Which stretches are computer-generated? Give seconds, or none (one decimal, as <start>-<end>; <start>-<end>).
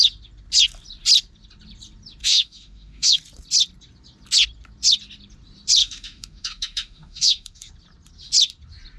2.2-3.2; 5.8-7.7